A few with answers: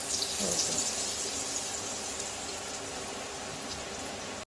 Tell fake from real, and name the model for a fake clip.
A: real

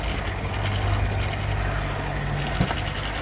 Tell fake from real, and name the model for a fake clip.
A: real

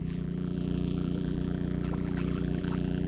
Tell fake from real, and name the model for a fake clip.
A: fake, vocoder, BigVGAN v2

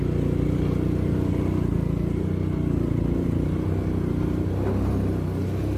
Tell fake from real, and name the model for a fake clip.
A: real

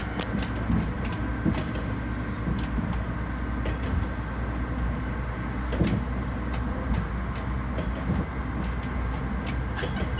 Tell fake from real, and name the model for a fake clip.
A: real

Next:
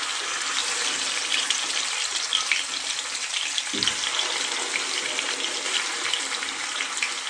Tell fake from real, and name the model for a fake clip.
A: real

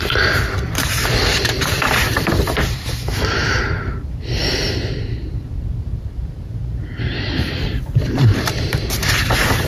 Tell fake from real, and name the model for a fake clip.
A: fake, vocoder, BigVGAN v2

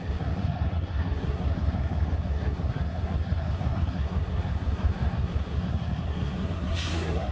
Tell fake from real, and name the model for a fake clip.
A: fake, codec, SNAC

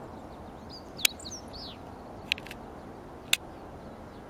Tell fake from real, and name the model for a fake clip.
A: real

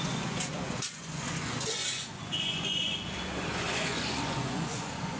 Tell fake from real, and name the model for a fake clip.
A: fake, vocoder, Vocos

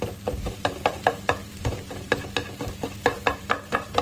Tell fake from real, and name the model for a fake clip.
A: fake, vocoder, BigVGAN v2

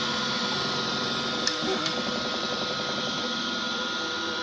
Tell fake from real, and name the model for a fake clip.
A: fake, vocoder, BigVGAN v2